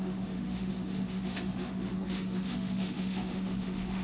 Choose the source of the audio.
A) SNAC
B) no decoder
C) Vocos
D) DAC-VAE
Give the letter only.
D